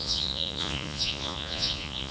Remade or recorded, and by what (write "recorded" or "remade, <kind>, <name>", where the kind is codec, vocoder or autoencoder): remade, vocoder, Vocos